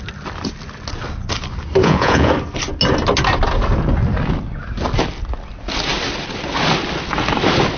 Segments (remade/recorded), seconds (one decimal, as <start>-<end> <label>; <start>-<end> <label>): 0.0-1.8 recorded; 1.8-2.3 remade; 2.3-7.8 recorded